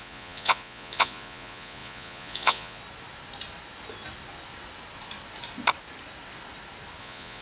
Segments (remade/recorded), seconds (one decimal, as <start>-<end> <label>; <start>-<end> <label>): 0.0-2.8 remade; 2.8-7.0 recorded; 7.0-7.4 remade